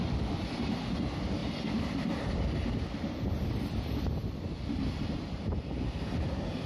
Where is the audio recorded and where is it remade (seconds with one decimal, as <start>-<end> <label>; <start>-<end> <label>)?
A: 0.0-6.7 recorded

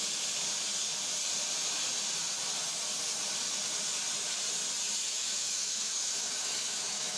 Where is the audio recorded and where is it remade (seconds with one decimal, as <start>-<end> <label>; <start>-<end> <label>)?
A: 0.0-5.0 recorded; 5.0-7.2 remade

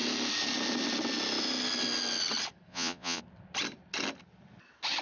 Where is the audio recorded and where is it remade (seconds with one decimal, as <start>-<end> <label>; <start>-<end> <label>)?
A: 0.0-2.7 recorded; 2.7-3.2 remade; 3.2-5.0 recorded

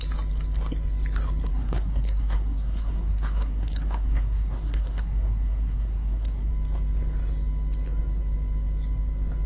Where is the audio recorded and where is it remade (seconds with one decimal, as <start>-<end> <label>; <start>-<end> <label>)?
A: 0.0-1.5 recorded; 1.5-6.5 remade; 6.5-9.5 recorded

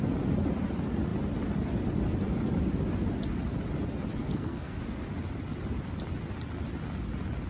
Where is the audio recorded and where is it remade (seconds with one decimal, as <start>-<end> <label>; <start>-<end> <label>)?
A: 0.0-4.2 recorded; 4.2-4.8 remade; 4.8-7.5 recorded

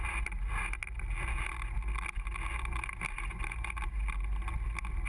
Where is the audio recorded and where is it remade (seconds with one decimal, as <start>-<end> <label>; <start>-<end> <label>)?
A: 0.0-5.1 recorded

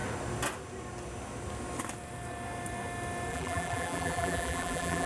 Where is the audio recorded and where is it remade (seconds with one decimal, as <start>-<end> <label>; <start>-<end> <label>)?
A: 0.0-3.3 recorded; 3.3-5.1 remade

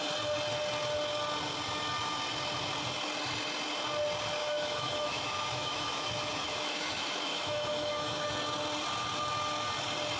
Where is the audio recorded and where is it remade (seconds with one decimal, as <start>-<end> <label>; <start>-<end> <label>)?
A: 0.0-4.4 recorded; 4.4-8.3 remade; 8.3-10.2 recorded